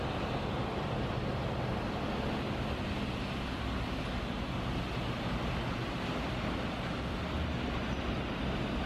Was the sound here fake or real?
real